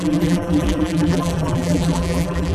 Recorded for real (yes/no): no